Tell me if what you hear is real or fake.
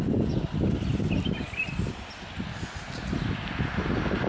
real